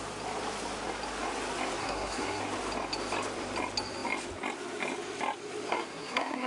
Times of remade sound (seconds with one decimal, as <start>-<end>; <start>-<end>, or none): 1.8-2.4; 5.7-6.5